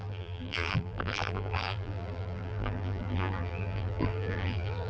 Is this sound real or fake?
fake